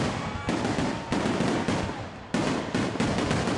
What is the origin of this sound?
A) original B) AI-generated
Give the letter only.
A